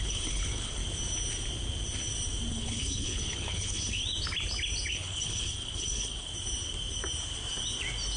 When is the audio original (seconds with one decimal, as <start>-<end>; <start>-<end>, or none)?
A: 0.8-2.5; 4.0-4.9; 6.3-8.2